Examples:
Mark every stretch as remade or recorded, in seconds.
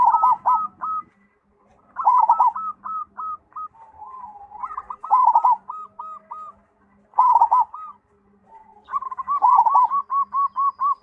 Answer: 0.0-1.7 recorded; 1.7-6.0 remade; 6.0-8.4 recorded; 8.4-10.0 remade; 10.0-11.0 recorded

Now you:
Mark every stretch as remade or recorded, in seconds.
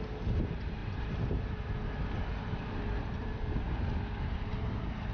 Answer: 0.0-0.8 recorded; 0.8-1.7 remade; 1.7-5.1 recorded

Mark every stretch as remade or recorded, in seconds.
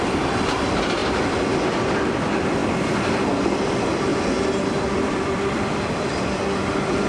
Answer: 0.0-2.6 remade; 2.6-3.3 recorded; 3.3-4.1 remade; 4.1-5.1 recorded; 5.1-7.1 remade